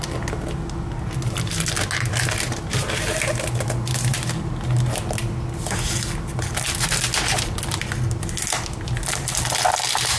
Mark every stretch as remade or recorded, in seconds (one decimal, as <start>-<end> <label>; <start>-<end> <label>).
0.0-10.2 recorded